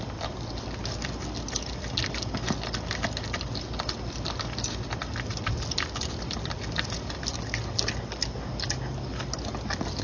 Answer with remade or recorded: recorded